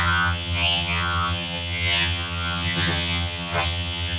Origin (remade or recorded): remade